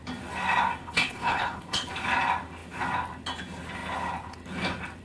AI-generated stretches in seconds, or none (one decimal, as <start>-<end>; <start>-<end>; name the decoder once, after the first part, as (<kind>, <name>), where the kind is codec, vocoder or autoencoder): 0.8-1.9 (codec, HILCodec)

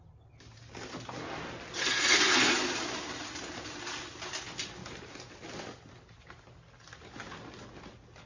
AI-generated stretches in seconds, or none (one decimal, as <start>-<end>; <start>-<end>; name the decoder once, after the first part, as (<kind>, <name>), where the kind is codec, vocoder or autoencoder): 1.8-2.5 (codec, SNAC)

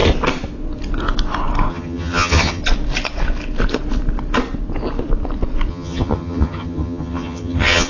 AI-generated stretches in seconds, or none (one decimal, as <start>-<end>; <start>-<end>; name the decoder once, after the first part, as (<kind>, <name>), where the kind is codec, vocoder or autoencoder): 1.7-2.6 (vocoder, HiFi-GAN); 5.7-7.9

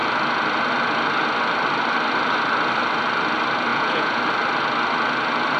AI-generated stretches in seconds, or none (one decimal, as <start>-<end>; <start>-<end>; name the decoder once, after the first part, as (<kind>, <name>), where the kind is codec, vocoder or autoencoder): 3.7-4.2 (vocoder, Vocos)

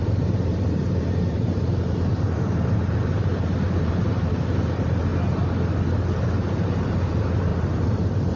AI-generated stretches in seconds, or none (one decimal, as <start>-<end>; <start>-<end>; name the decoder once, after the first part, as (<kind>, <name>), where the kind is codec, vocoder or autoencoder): 0.0-5.1 (vocoder, BigVGAN v2); 6.2-8.4